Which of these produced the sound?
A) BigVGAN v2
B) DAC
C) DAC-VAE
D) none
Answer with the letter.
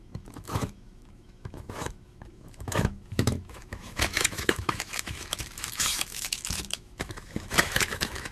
C